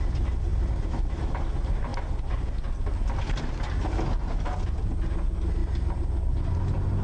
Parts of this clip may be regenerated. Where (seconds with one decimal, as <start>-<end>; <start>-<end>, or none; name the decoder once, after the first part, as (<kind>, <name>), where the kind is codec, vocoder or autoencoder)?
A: 0.5-1.3 (vocoder, BigVGAN v2); 4.2-5.1